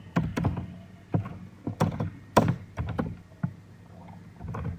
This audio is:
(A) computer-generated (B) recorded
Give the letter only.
B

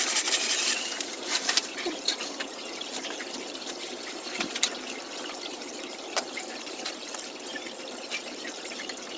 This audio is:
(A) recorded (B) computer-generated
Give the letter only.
B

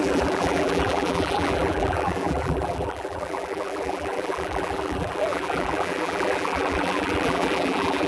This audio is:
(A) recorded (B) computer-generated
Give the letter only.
B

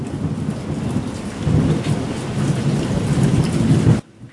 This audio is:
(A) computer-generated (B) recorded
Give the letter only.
B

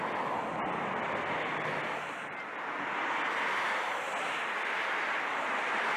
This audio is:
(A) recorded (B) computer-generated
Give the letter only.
A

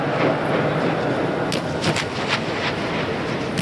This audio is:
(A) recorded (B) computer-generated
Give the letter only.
A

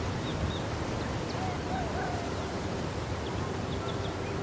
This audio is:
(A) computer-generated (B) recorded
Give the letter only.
B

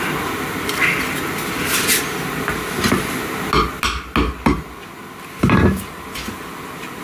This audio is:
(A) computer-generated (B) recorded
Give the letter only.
B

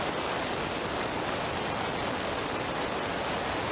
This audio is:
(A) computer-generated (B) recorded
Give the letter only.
A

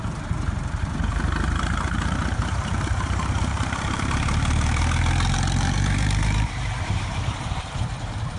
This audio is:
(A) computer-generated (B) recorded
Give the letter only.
A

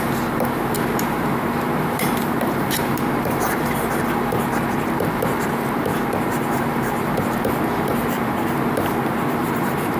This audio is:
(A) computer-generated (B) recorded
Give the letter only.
A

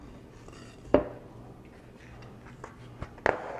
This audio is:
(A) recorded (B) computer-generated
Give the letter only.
A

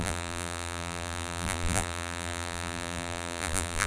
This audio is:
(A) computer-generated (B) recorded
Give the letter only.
A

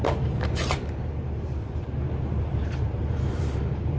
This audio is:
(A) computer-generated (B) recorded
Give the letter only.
A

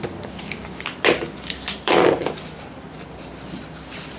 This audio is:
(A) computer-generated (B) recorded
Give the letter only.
A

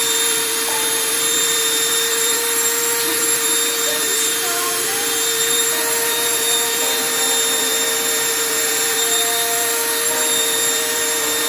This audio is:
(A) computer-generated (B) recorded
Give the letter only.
A